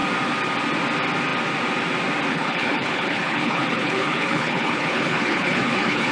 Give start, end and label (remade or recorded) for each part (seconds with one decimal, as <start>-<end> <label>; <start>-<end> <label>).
0.0-2.3 recorded; 2.3-6.1 remade